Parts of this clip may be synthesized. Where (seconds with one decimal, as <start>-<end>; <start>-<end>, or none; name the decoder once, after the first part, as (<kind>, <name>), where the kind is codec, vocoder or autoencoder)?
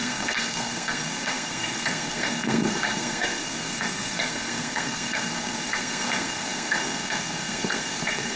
0.0-8.4 (codec, SNAC)